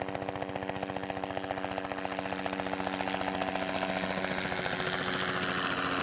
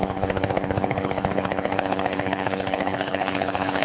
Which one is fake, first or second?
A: second